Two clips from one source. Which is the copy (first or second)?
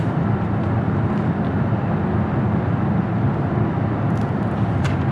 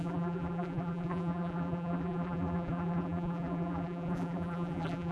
second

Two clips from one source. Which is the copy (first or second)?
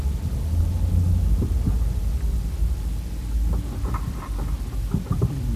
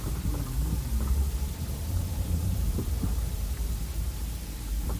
second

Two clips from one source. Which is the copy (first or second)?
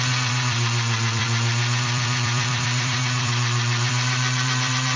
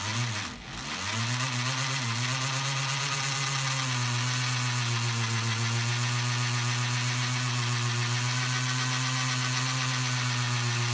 first